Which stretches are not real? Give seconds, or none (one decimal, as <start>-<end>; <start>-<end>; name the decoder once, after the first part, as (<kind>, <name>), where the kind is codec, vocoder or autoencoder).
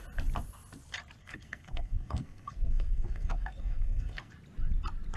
1.2-4.3 (codec, SNAC)